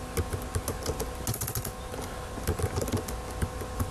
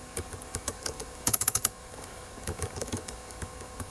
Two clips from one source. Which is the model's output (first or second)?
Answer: second